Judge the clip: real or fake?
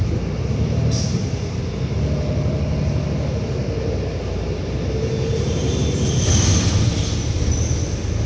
real